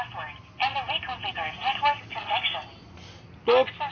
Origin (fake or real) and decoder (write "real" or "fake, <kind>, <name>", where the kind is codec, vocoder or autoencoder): real